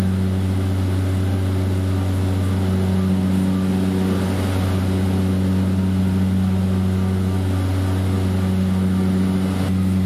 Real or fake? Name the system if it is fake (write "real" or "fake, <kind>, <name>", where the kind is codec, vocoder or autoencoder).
real